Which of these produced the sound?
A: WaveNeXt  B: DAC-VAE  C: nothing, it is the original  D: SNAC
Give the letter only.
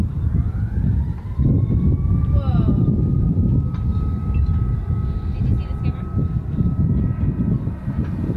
C